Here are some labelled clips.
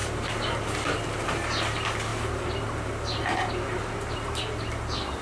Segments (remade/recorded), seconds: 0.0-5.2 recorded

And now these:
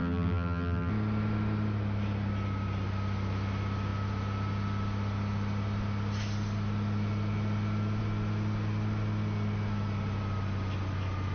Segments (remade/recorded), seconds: 0.0-0.9 remade; 0.9-11.3 recorded